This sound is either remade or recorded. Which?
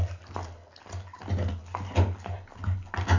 recorded